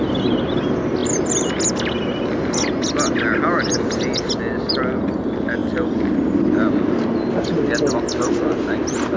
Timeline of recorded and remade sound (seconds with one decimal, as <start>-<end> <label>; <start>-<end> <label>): 0.0-9.2 recorded